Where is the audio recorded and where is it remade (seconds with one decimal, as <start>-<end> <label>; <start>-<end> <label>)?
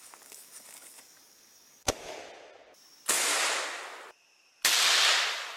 0.0-2.2 remade; 2.2-5.6 recorded